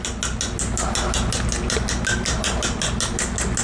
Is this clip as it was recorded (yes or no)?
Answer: yes